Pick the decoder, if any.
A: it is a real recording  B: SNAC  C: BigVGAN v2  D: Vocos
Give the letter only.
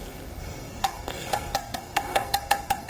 B